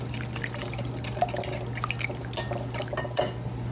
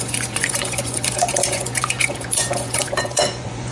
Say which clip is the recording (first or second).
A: first